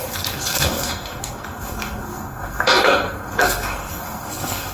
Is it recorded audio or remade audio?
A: remade